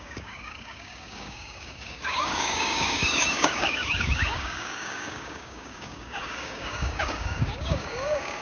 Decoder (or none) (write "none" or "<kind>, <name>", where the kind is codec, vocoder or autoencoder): codec, DAC